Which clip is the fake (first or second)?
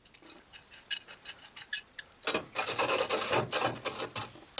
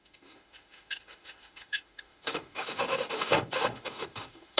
second